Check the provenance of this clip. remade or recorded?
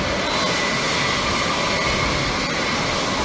recorded